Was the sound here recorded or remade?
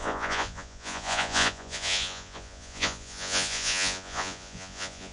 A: remade